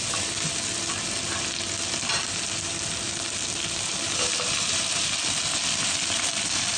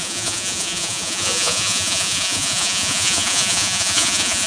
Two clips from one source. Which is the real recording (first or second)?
first